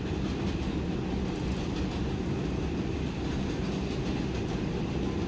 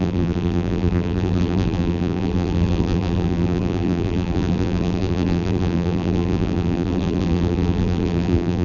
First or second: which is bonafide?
first